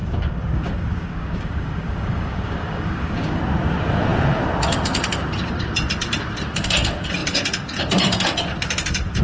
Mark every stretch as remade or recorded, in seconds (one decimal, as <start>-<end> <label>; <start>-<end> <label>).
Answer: 0.0-3.4 remade; 3.4-9.2 recorded